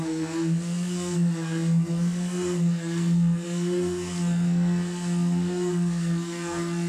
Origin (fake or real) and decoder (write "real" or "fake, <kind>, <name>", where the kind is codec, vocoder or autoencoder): fake, codec, SNAC